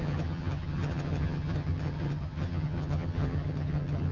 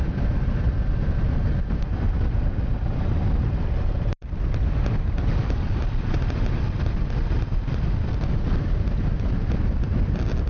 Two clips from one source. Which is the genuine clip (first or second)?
second